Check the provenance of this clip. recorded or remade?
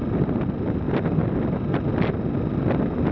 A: recorded